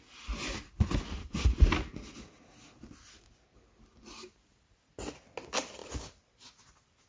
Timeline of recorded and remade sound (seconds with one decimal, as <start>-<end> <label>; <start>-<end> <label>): 0.0-7.1 recorded

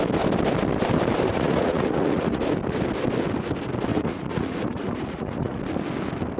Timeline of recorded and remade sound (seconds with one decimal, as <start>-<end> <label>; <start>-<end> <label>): 0.0-1.3 recorded; 1.3-2.4 remade; 2.4-3.9 recorded; 3.9-5.6 remade; 5.6-6.4 recorded